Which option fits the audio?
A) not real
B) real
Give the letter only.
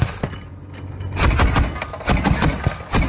B